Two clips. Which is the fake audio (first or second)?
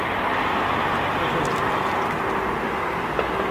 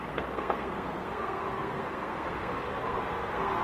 second